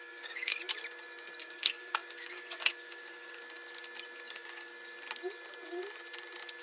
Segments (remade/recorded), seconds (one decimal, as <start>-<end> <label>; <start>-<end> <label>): 0.0-0.6 remade; 0.6-1.4 recorded; 1.4-3.4 remade; 3.4-4.3 recorded; 4.3-4.7 remade; 4.7-6.6 recorded